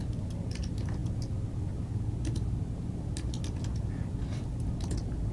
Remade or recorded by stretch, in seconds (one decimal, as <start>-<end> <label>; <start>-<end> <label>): 0.0-5.3 recorded